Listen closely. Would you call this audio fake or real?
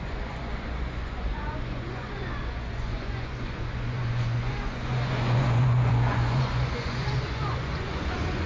fake